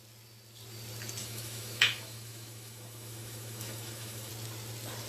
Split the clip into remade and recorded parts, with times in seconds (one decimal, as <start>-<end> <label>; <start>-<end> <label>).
0.0-1.2 recorded; 1.2-4.3 remade; 4.3-5.1 recorded